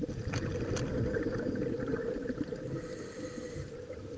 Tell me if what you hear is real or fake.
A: real